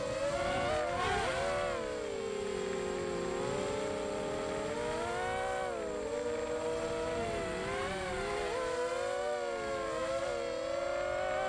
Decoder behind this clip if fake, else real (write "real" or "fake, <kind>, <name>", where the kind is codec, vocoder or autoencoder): real